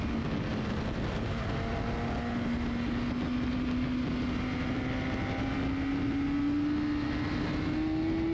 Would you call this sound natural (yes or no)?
yes